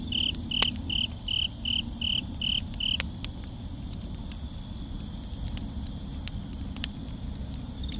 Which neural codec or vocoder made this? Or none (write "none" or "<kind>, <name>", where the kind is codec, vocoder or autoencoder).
none